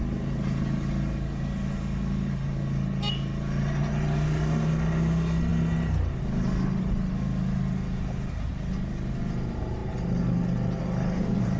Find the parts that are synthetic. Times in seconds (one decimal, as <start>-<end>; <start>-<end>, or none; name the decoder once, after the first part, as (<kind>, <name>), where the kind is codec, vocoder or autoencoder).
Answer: none